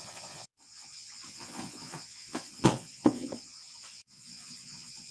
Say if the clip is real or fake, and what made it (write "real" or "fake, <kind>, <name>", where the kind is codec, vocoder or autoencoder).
fake, vocoder, Vocos